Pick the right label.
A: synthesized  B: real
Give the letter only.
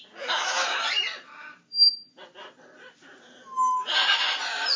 B